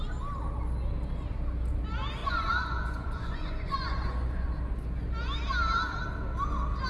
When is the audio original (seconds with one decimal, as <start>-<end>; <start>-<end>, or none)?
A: 0.0-2.2; 4.5-6.9